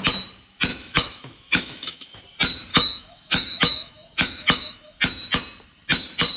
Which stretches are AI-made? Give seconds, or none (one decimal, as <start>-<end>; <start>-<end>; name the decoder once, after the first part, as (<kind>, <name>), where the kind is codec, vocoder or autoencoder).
0.7-2.2 (autoencoder, DAC-VAE); 2.7-5.0